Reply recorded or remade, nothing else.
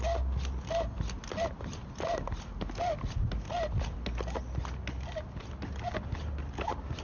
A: recorded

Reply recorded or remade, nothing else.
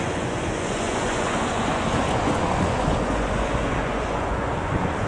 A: remade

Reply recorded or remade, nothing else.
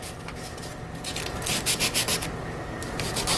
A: recorded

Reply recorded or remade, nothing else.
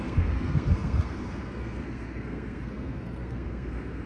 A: remade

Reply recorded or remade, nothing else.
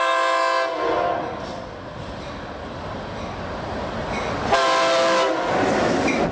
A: recorded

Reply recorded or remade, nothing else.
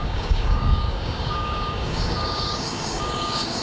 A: remade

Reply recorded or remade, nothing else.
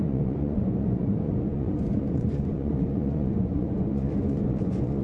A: remade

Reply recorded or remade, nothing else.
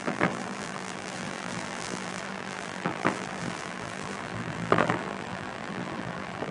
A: remade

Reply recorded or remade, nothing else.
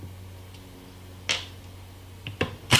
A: recorded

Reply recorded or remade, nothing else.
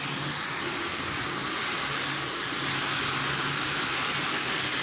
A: recorded